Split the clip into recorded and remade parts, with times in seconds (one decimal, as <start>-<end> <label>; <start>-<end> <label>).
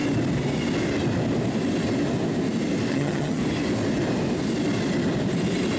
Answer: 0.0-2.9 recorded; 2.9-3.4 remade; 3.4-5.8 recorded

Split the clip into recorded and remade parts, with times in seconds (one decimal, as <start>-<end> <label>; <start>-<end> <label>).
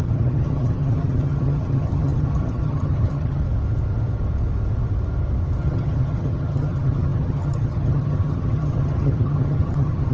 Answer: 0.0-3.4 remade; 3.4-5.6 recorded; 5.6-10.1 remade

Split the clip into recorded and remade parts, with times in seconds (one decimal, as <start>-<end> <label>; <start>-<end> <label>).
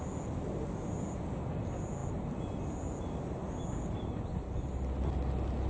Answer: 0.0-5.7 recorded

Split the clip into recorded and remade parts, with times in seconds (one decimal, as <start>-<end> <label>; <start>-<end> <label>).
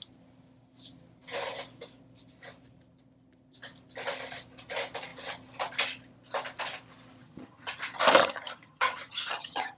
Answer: 0.0-7.2 recorded; 7.2-7.8 remade; 7.8-8.2 recorded; 8.2-9.8 remade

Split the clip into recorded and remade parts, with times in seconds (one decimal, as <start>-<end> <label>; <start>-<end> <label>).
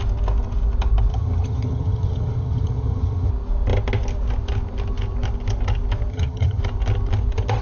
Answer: 0.0-1.1 recorded; 1.1-3.3 remade; 3.3-6.1 recorded; 6.1-6.6 remade; 6.6-7.6 recorded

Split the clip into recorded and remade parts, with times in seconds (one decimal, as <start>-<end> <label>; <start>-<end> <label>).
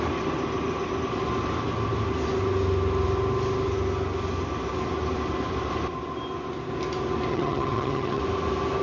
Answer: 0.0-7.3 recorded; 7.3-8.2 remade; 8.2-8.8 recorded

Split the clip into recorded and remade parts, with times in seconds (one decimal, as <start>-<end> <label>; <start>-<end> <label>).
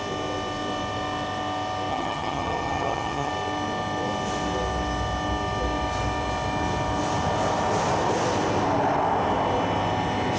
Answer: 0.0-1.9 recorded; 1.9-3.3 remade; 3.3-10.4 recorded